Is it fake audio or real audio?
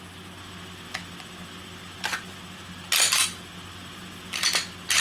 real